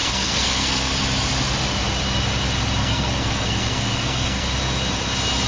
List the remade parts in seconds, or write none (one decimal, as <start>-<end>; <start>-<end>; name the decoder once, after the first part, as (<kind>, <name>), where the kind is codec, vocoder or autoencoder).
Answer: 0.0-0.9 (codec, SNAC); 2.8-4.5